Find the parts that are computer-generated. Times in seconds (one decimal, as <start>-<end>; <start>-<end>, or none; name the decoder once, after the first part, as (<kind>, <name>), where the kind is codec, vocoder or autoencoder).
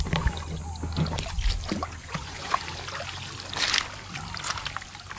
2.0-2.6 (vocoder, Vocos)